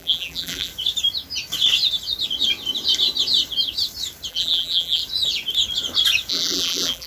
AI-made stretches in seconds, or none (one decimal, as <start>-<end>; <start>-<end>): 0.0-0.7; 4.3-5.0; 6.3-7.1